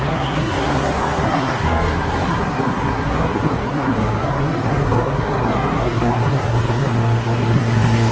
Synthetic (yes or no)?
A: yes